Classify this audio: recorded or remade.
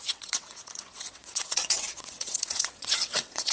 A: remade